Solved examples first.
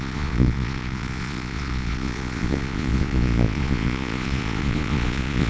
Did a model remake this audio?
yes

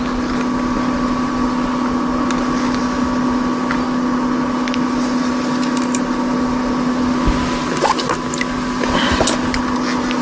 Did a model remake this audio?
no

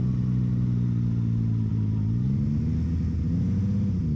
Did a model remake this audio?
no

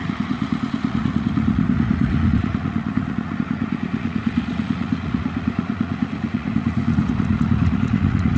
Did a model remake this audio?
yes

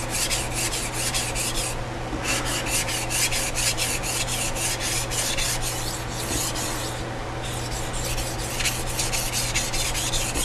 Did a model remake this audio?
no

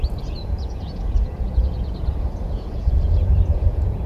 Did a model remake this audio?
yes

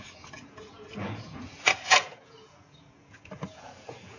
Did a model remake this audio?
yes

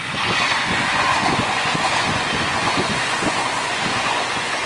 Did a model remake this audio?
yes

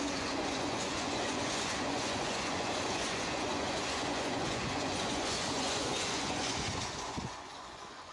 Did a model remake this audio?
yes